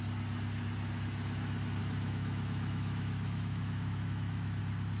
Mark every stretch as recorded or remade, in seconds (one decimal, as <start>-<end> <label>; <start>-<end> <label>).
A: 0.0-1.8 recorded; 1.8-4.6 remade; 4.6-5.0 recorded

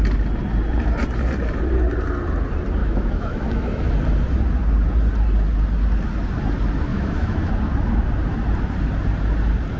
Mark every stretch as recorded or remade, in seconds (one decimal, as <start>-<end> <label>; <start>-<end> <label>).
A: 0.0-2.8 recorded; 2.8-3.9 remade; 3.9-6.9 recorded; 6.9-7.5 remade; 7.5-9.8 recorded

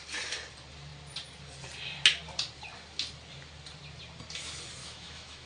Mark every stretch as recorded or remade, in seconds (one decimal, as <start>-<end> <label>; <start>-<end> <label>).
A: 0.0-4.8 recorded; 4.8-5.5 remade

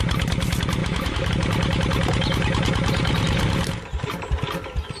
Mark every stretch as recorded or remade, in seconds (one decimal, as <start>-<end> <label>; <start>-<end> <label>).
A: 0.0-0.8 recorded; 0.8-1.3 remade; 1.3-5.0 recorded

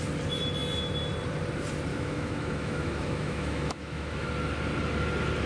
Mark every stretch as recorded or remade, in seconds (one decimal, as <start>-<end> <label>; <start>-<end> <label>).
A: 0.0-1.9 recorded; 1.9-4.3 remade; 4.3-5.5 recorded